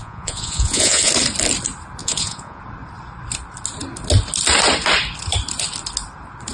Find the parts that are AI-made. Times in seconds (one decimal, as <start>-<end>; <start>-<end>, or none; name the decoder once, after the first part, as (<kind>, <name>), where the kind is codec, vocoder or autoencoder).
0.0-1.1 (vocoder, Vocos); 2.0-2.6